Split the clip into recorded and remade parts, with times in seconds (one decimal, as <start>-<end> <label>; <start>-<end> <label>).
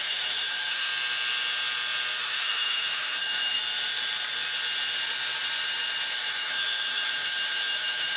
0.0-0.9 remade; 0.9-2.2 recorded; 2.2-3.6 remade; 3.6-6.1 recorded; 6.1-8.2 remade